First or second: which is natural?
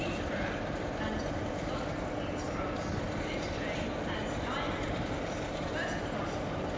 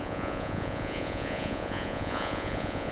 first